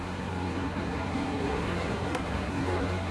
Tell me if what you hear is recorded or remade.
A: remade